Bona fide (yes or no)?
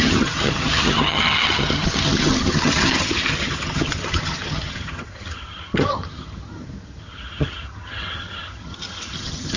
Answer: no